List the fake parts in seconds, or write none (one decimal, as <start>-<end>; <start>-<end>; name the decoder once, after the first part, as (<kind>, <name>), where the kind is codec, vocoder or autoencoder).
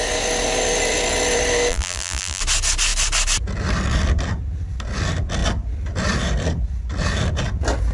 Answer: 1.7-2.4 (vocoder, BigVGAN v2)